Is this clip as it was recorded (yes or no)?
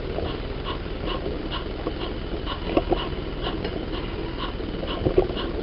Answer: yes